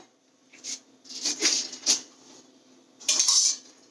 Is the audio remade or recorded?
recorded